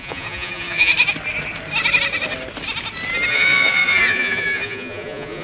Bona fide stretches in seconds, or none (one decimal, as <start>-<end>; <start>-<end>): 0.9-3.3